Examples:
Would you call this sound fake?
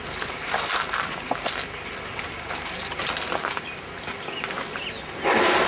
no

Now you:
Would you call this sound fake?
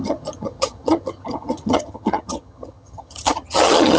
yes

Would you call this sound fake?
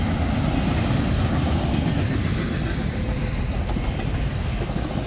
no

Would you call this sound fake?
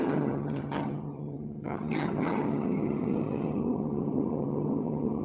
yes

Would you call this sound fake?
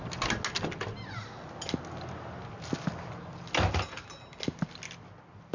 no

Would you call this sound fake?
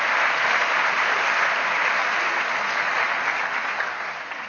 no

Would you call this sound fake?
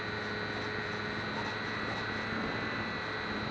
no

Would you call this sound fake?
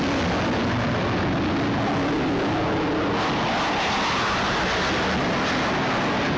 no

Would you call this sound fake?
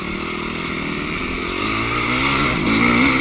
no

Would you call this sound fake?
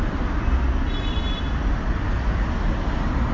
no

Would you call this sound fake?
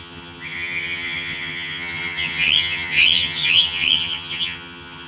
yes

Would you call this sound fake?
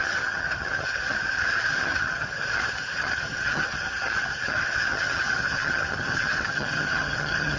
yes